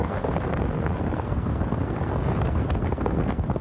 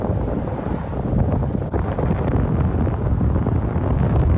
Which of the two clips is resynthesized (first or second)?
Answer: first